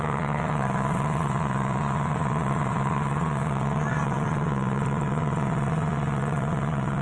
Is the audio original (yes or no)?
no